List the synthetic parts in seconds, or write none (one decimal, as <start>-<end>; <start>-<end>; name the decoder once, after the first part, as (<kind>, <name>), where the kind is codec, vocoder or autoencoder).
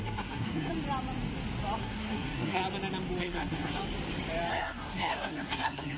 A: 0.0-0.7 (codec, SNAC); 1.8-2.6; 3.2-3.8; 4.5-6.0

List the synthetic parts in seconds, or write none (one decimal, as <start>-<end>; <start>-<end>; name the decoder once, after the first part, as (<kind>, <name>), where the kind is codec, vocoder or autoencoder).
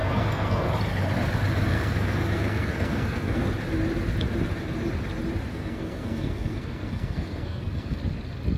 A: 0.0-0.7 (codec, SNAC); 1.7-3.5; 5.5-8.0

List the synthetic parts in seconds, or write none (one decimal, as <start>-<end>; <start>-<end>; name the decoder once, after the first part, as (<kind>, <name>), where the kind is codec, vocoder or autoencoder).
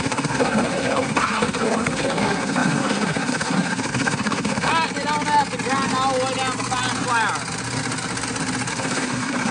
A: 0.0-4.7 (codec, SNAC); 8.7-9.5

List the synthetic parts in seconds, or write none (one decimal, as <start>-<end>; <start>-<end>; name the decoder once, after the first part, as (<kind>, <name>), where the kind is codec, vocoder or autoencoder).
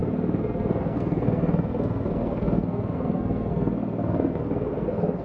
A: 0.0-5.2 (codec, SNAC)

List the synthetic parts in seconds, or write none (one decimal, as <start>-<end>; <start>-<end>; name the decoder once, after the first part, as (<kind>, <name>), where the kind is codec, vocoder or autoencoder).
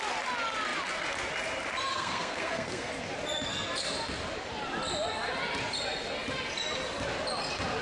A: 1.9-2.9 (codec, SNAC)